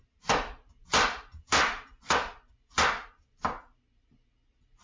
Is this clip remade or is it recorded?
recorded